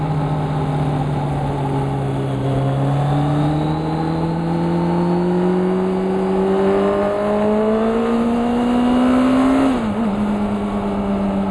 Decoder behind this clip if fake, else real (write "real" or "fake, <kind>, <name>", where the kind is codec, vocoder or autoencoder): real